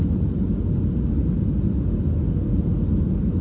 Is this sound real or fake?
real